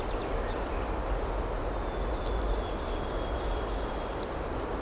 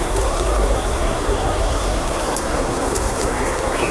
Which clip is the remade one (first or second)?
second